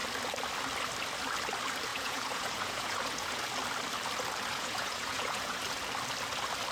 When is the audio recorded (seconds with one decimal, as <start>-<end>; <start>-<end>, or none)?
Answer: 0.0-1.9; 3.4-4.5; 5.6-6.7